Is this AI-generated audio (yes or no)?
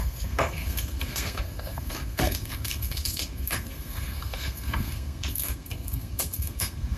yes